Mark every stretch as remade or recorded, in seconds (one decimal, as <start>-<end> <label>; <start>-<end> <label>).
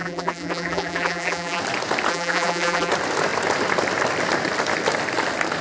0.0-1.6 remade; 1.6-2.1 recorded; 2.1-2.9 remade; 2.9-5.6 recorded